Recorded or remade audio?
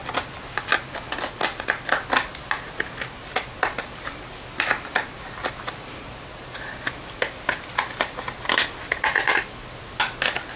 recorded